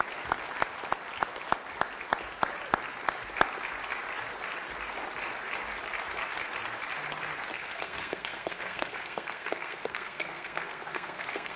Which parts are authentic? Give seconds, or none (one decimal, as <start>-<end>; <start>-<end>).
0.0-7.5